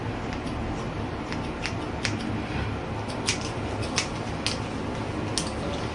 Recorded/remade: recorded